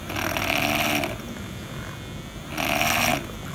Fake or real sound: real